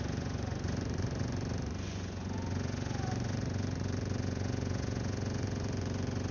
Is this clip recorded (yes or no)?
no